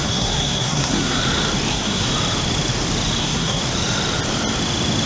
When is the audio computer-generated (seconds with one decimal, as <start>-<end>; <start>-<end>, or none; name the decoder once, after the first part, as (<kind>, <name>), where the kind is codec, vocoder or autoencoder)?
0.0-1.2 (codec, SNAC); 1.7-2.1; 3.2-3.6